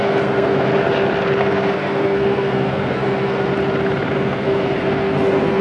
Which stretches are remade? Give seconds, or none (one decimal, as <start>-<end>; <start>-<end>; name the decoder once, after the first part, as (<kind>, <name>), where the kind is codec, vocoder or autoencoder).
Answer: 0.0-0.7 (codec, SNAC); 1.4-3.5; 4.1-5.6